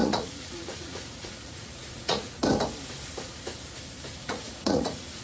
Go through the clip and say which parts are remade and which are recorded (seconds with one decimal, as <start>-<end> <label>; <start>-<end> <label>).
0.0-2.4 remade; 2.4-4.2 recorded; 4.2-5.2 remade